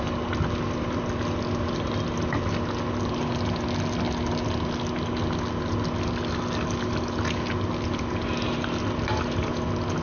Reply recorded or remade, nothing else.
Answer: recorded